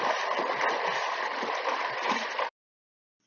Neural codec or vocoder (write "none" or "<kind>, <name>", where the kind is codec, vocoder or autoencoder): vocoder, BigVGAN v2